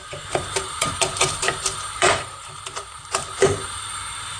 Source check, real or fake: fake